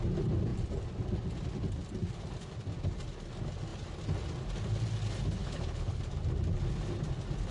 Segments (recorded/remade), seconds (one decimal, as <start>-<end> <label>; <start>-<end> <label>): 0.0-5.4 recorded; 5.4-6.0 remade; 6.0-7.5 recorded